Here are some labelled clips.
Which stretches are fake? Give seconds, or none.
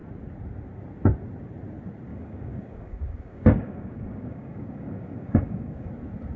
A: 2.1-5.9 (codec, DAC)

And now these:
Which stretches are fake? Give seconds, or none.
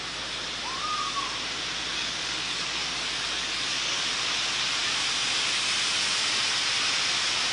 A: 1.9-4.0 (codec, DAC)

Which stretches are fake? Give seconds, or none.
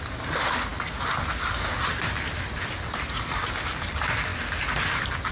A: none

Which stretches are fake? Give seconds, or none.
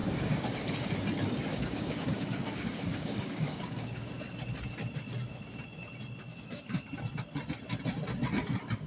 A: 0.0-0.7 (codec, DAC); 1.5-4.1; 6.3-7.0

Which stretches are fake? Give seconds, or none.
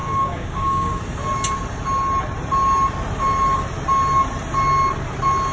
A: 0.0-1.0 (codec, DAC)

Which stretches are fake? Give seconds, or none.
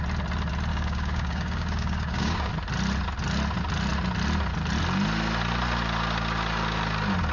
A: 0.7-2.5 (codec, DAC)